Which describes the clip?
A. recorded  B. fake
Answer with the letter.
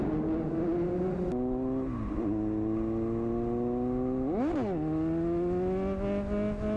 A